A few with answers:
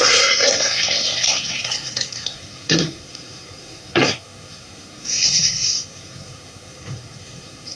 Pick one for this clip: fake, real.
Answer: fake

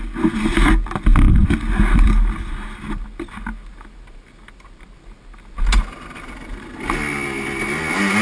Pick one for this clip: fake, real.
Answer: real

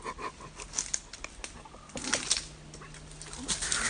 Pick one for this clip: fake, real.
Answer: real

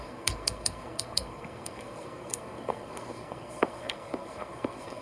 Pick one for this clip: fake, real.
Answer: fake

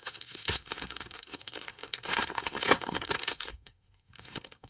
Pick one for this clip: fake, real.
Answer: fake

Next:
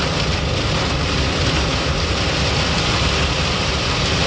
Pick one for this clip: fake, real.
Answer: real